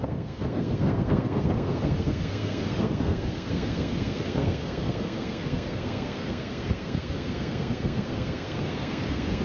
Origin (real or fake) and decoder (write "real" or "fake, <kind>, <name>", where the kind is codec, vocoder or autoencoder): fake, codec, SNAC